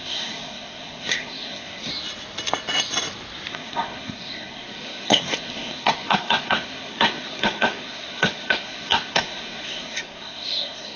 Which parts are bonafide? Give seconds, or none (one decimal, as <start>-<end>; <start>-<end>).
1.9-3.5